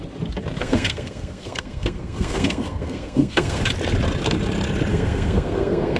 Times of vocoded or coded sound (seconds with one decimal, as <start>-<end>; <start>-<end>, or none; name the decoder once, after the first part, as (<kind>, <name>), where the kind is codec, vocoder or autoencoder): 0.6-3.6 (codec, SNAC); 4.9-6.0